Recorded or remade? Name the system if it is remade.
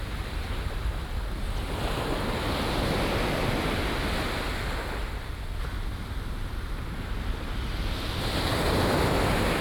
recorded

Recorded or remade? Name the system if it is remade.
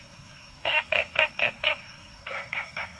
remade, codec, SNAC